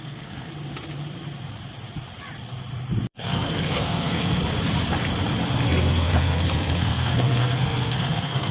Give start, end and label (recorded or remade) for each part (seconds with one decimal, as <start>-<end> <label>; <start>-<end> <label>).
0.0-0.5 remade; 0.5-3.1 recorded; 3.1-4.4 remade; 4.4-5.7 recorded; 5.7-8.5 remade